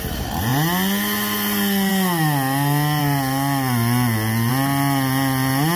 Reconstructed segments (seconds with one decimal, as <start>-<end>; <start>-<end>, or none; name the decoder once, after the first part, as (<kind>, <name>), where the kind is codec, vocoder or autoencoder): none